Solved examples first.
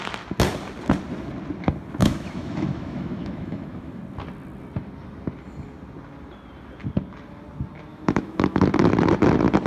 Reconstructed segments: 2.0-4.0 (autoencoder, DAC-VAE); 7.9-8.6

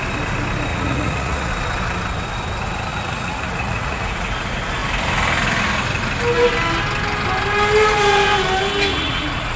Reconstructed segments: 0.7-1.5 (vocoder, Vocos); 2.9-4.3; 8.9-9.6

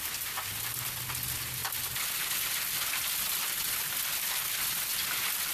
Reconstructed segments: none

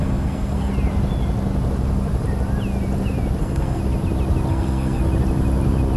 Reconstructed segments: 0.0-0.7 (codec, SNAC); 3.4-3.8; 4.5-5.0

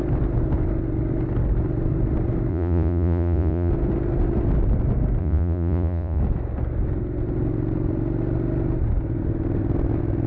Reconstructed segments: 2.5-3.7 (vocoder, Vocos); 5.2-6.2

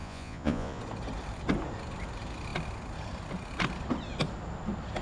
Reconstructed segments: 0.0-0.8 (vocoder, Vocos)

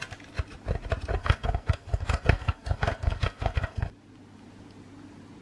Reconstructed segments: 1.2-3.9 (codec, SNAC)